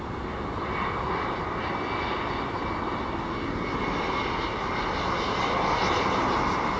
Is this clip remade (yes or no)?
no